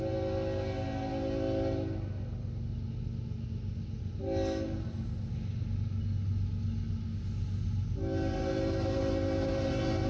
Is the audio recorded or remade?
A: recorded